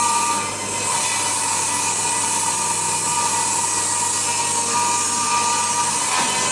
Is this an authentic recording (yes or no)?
yes